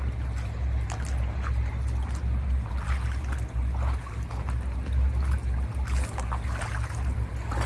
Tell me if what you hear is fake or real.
real